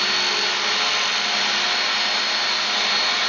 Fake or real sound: real